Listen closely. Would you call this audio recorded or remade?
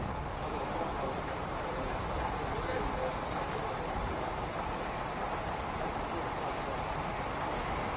recorded